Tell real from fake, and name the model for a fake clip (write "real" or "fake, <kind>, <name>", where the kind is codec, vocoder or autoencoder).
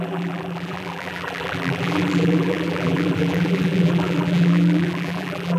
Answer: fake, vocoder, BigVGAN v2